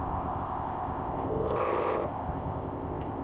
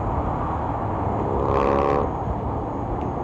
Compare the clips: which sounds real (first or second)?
second